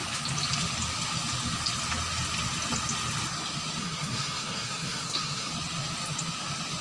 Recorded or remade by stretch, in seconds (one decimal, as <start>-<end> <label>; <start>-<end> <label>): 0.0-3.8 recorded; 3.8-5.5 remade; 5.5-6.8 recorded